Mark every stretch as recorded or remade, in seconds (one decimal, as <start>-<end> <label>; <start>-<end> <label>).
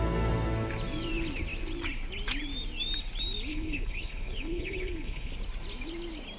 0.0-3.5 recorded; 3.5-5.3 remade; 5.3-6.4 recorded